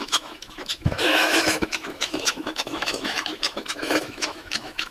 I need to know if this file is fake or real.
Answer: fake